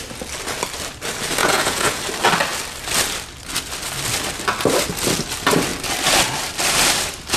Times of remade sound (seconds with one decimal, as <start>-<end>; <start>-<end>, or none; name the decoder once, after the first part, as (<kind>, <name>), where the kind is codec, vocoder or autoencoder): 1.4-2.0 (vocoder, Vocos)